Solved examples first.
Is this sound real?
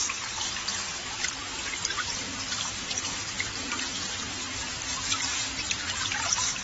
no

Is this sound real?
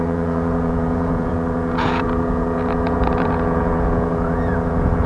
no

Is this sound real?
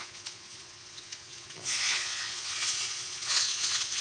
no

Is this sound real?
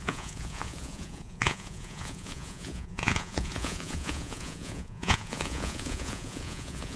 no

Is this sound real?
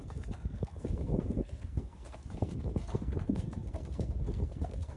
no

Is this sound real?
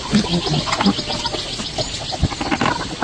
yes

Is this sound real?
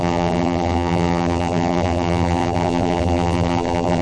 no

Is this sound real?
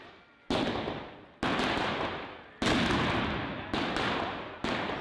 yes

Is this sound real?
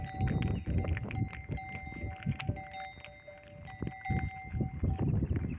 yes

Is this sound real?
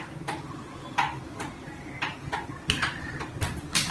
yes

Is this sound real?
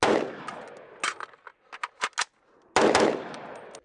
yes